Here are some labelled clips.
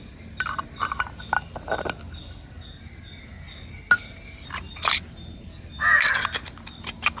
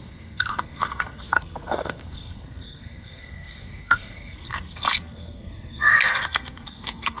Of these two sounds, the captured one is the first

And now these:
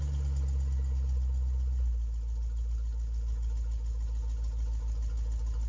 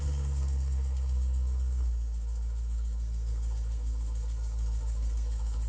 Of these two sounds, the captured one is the first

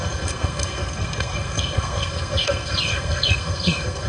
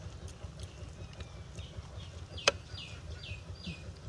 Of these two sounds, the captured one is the second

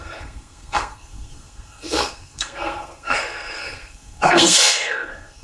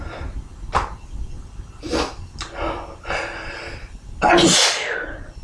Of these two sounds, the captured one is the second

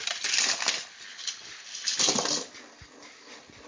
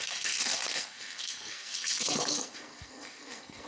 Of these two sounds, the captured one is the first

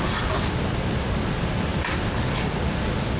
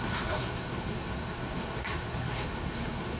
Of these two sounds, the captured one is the first